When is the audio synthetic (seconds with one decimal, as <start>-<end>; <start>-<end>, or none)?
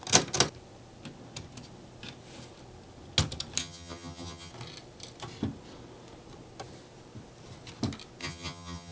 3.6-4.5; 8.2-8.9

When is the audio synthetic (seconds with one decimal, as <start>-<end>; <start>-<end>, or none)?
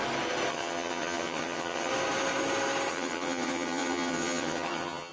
0.5-1.9; 2.9-5.1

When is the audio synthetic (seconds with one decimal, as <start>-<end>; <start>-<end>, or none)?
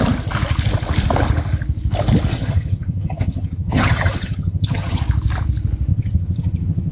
2.3-5.0; 5.9-6.9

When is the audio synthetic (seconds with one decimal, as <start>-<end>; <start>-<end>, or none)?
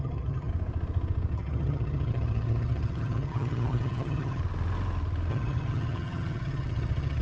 0.0-0.5; 1.3-4.4; 5.3-7.2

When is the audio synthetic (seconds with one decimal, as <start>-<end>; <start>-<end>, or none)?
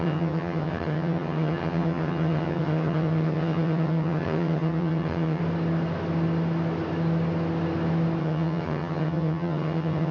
0.0-5.4; 8.2-10.1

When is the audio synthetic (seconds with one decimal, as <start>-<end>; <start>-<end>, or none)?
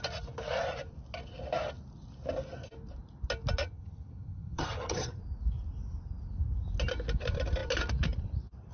3.6-5.2